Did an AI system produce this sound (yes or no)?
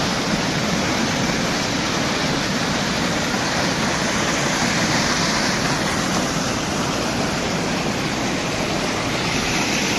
no